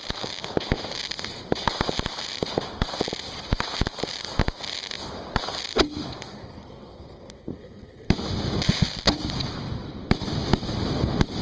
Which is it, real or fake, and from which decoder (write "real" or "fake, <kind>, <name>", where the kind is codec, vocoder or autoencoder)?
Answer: real